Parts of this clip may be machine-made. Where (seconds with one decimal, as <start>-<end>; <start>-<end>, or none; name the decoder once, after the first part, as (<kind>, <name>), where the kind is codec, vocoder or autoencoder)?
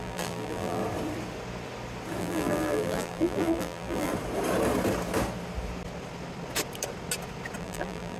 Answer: 0.0-0.8 (vocoder, BigVGAN v2); 2.2-4.1; 7.6-8.2